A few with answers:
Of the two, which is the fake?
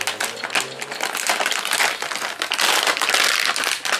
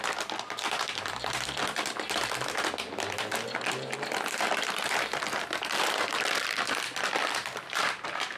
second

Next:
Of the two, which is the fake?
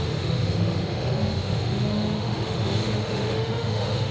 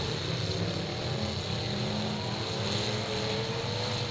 first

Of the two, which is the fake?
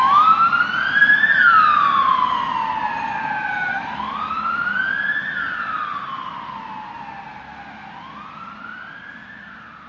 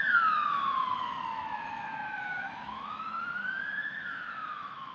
second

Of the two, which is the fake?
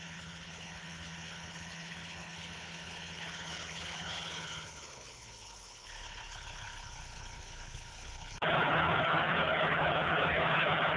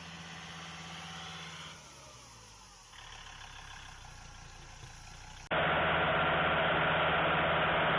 first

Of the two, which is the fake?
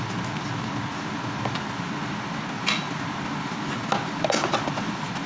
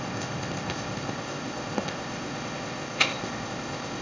second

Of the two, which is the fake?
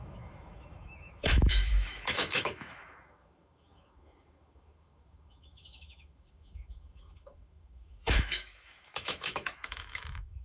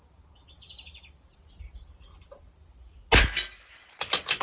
first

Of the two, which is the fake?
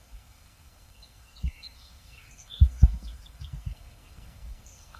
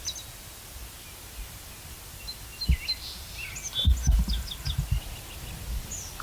first